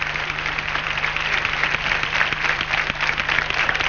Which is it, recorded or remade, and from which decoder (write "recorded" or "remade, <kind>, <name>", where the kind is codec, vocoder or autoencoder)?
remade, vocoder, BigVGAN v2